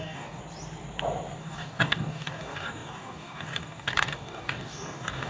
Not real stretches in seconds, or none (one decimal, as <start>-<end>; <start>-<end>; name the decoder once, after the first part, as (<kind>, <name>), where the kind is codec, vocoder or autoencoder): 0.0-0.4 (codec, DAC); 1.4-5.3